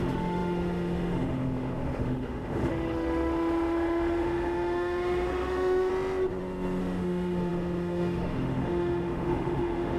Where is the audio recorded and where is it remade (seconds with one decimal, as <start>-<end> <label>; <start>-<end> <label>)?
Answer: 0.0-5.9 remade; 5.9-6.8 recorded; 6.8-10.0 remade